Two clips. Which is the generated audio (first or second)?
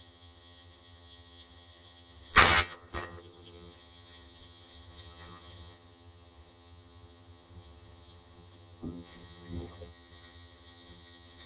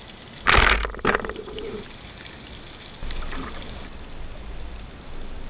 first